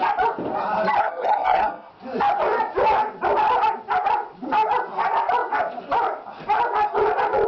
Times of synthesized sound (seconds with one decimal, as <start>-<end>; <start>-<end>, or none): 1.0-1.9